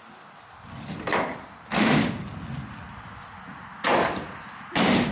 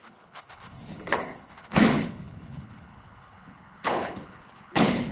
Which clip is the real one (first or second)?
first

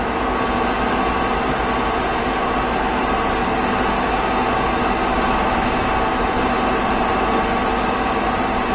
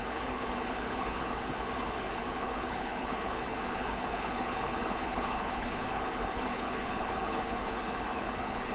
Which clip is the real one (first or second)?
first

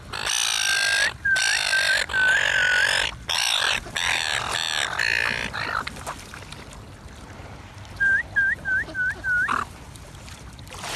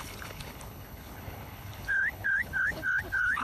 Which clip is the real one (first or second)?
first